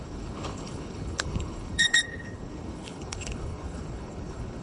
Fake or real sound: fake